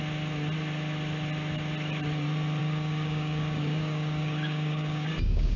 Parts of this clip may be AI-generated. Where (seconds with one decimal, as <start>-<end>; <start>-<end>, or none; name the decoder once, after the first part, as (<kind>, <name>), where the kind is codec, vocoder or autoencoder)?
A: 2.6-5.6 (codec, DAC)